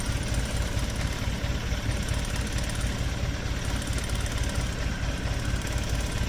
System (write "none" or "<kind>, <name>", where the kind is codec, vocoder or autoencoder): none